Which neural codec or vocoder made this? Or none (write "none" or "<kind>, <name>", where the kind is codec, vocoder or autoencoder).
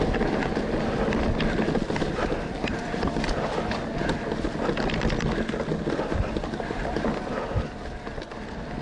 none